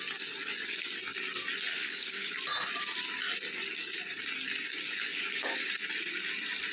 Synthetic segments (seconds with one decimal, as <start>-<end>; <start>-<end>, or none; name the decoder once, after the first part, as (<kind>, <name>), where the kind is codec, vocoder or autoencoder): 1.7-2.3 (codec, DAC); 5.1-5.7